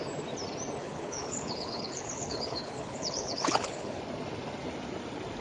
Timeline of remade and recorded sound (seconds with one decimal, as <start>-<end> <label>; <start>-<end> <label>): 0.0-0.8 recorded; 0.8-4.0 remade; 4.0-5.4 recorded